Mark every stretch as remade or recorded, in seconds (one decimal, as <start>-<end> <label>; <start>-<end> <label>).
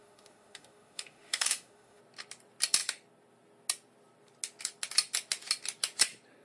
0.0-2.0 remade; 2.0-6.4 recorded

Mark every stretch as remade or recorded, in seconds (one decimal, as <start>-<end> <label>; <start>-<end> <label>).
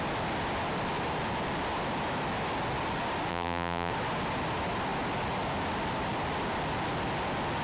0.0-3.3 recorded; 3.3-3.9 remade; 3.9-7.6 recorded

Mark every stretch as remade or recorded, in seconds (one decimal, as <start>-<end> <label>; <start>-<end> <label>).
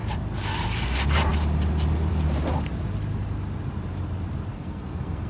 0.0-4.5 recorded; 4.5-5.3 remade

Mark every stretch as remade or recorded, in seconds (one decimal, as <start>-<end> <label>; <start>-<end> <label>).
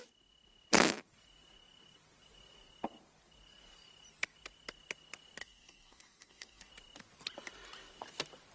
0.0-5.4 recorded; 5.4-6.7 remade; 6.7-8.5 recorded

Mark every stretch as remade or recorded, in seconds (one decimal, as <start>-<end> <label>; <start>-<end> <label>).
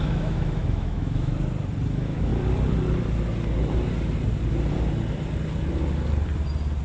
0.0-1.3 remade; 1.3-1.9 recorded; 1.9-2.3 remade; 2.3-6.8 recorded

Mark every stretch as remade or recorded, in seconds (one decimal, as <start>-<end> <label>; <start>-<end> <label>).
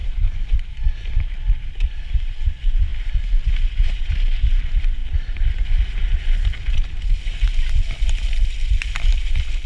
0.0-0.8 remade; 0.8-9.7 recorded